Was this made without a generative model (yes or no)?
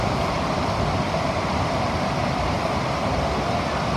yes